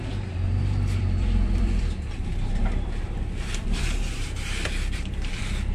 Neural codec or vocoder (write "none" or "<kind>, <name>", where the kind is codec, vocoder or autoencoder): vocoder, BigVGAN v2